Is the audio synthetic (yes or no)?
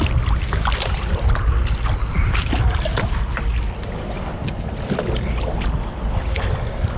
no